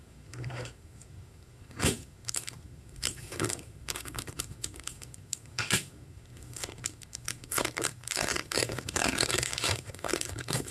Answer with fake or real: fake